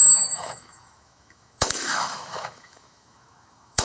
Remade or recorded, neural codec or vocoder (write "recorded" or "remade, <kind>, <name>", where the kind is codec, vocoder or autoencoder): remade, autoencoder, DAC-VAE